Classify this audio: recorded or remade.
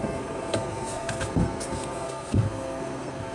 remade